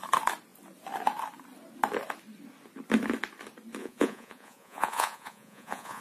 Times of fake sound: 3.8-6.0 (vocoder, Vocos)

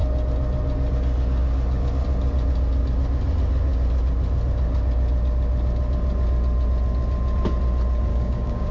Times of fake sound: 8.1-8.7 (codec, DAC)

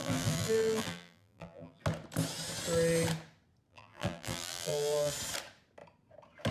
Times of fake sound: 0.0-1.8 (vocoder, BigVGAN v2); 3.7-5.1

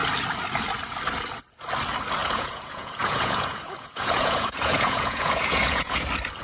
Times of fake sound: 2.2-6.0 (vocoder, Vocos)

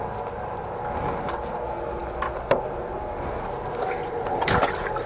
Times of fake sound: none